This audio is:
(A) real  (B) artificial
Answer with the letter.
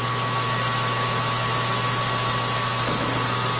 A